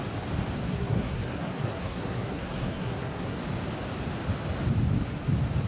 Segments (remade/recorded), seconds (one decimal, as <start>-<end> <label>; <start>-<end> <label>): 0.0-0.6 recorded; 0.6-3.4 remade; 3.4-5.7 recorded